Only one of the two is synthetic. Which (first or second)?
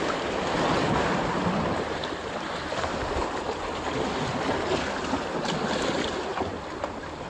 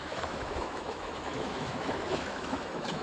second